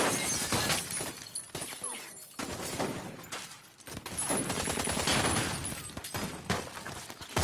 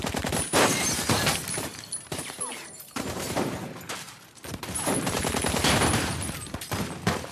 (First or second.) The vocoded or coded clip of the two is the second